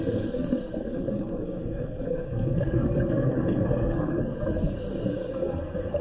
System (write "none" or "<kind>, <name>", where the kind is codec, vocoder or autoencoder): codec, SNAC